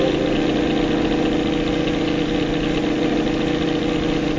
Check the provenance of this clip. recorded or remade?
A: recorded